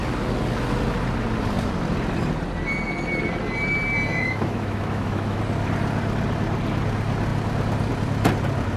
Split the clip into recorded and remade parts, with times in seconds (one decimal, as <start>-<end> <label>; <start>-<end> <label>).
0.0-4.1 recorded; 4.1-5.4 remade; 5.4-8.8 recorded